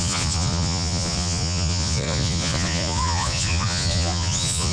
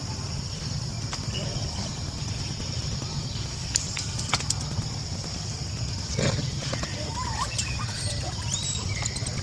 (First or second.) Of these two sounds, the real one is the second